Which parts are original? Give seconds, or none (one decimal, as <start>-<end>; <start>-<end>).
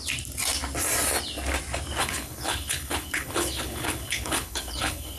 0.0-2.0